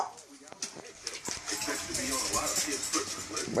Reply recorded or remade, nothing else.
recorded